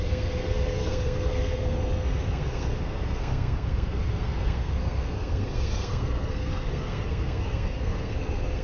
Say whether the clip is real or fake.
fake